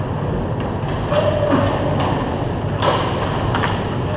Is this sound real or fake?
real